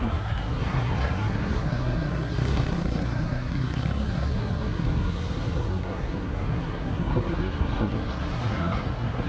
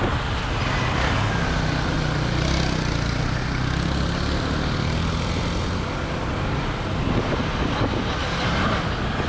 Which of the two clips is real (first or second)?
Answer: second